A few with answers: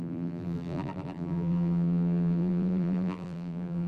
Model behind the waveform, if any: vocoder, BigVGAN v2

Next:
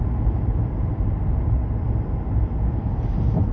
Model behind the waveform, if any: none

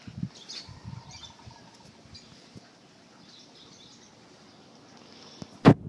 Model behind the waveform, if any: none